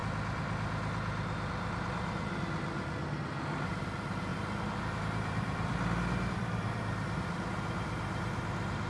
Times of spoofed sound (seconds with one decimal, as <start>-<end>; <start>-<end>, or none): 0.0-4.3; 5.0-8.9